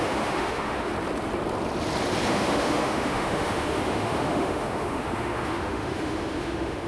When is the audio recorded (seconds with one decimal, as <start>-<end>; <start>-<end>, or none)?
0.9-2.3